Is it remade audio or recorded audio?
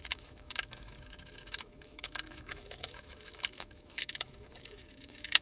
remade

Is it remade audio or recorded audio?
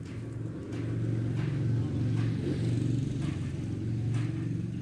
recorded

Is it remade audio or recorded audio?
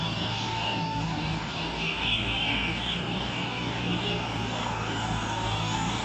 remade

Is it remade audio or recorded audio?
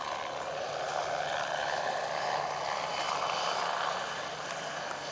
recorded